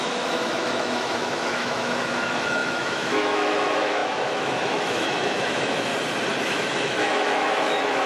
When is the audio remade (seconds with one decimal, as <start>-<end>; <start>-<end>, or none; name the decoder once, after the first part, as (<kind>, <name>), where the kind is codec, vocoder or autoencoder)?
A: 0.0-5.9 (autoencoder, DAC-VAE); 6.4-8.1